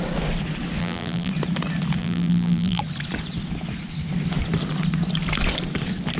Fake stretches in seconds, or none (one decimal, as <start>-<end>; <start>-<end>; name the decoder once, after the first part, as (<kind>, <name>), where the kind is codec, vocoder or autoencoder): 0.8-1.3 (vocoder, BigVGAN v2); 2.0-2.8

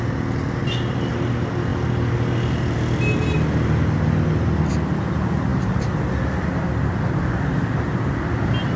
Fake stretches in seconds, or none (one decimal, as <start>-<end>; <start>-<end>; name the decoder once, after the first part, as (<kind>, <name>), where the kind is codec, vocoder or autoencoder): 0.6-1.1 (vocoder, BigVGAN v2); 5.5-8.2

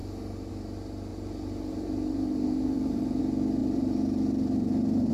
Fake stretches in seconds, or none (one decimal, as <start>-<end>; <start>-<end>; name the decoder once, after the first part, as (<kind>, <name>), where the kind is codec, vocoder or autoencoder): 1.1-3.2 (vocoder, BigVGAN v2); 3.6-5.1

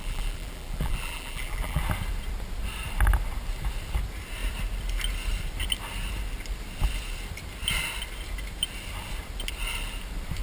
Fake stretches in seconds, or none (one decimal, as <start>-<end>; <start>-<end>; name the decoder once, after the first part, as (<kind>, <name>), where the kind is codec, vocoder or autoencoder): 0.0-1.8 (vocoder, BigVGAN v2)

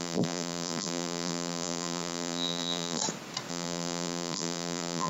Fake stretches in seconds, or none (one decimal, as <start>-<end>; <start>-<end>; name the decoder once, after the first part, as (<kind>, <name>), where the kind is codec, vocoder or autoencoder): 0.0-3.0 (vocoder, BigVGAN v2); 3.5-5.1

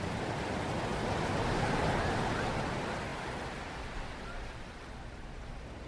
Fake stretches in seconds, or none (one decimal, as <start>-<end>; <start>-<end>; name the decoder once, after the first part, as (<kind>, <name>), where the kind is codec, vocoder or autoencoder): 3.1-5.9 (vocoder, BigVGAN v2)